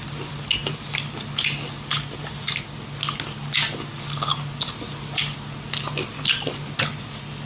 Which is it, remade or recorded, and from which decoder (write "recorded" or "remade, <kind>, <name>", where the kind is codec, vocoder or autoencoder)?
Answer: recorded